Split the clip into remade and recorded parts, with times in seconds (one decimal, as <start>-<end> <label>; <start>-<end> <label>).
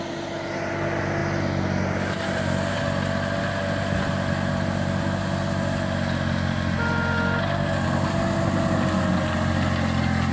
0.0-10.3 recorded